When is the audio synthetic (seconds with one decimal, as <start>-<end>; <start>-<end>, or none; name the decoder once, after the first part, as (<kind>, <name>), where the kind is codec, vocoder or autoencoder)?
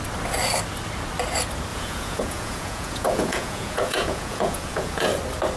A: 1.7-5.1 (vocoder, Vocos)